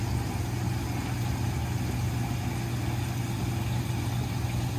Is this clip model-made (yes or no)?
no